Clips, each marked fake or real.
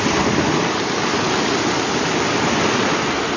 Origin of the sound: real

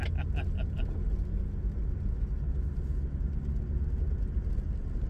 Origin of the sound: real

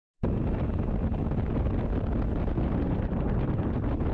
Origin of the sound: real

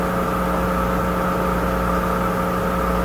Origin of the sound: real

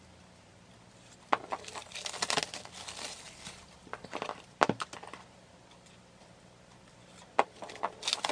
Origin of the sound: real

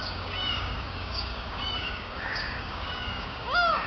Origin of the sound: fake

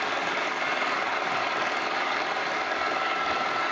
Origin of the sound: fake